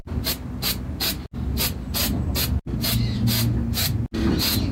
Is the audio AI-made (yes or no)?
no